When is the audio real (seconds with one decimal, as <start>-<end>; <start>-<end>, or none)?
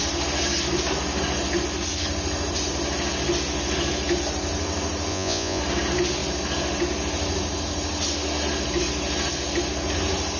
0.0-5.1; 5.6-10.4